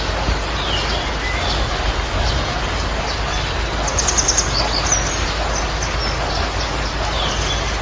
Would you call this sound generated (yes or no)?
no